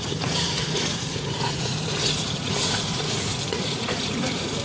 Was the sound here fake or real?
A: fake